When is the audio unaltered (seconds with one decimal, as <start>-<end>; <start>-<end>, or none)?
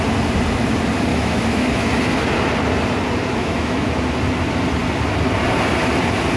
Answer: 0.0-1.1; 1.9-3.4; 3.9-6.4